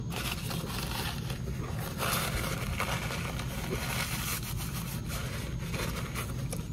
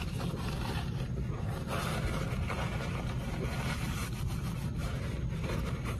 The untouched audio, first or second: first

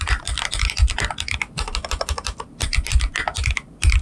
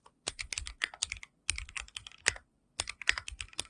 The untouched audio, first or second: second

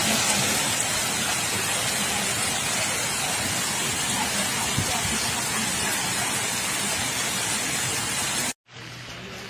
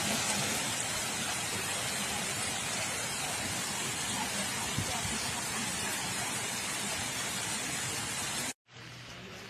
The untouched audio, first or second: first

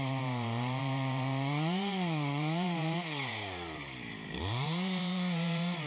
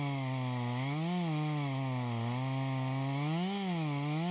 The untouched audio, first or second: second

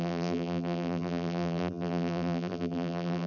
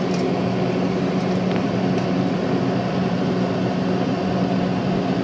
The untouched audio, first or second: second